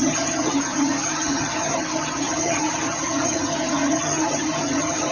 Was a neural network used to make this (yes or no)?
yes